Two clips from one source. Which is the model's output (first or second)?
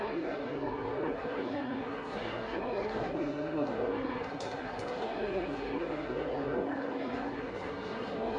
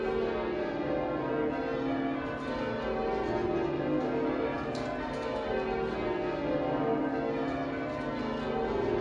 first